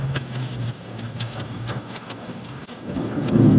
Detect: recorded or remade remade